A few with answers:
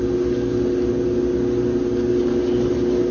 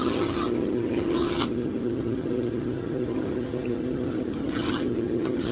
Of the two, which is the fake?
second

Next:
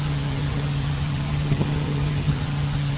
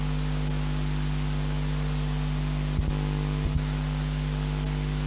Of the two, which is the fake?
first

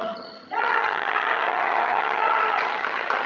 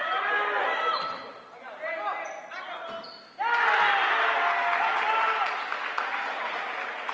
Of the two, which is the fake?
first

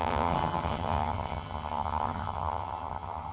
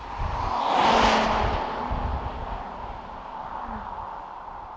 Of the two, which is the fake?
first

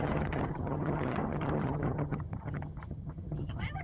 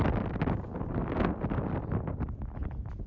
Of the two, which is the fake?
first